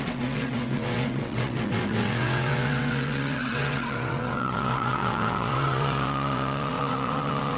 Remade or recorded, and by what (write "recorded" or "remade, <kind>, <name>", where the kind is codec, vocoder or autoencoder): remade, vocoder, WaveNeXt